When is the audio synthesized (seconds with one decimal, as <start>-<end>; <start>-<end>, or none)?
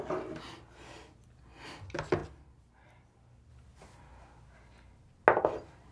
none